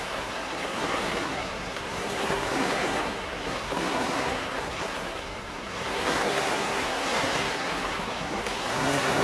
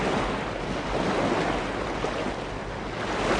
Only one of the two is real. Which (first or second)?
second